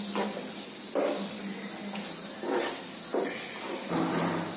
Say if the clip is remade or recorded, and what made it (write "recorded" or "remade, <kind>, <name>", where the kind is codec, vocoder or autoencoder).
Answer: recorded